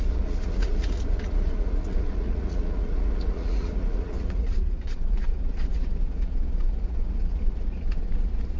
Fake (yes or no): yes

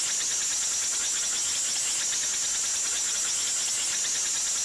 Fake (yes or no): no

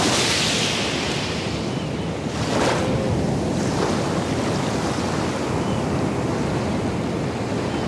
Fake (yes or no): no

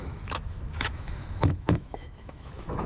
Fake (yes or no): yes